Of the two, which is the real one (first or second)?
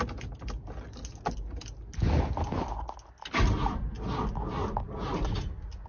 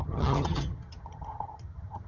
first